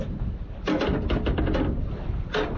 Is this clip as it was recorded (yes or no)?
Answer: yes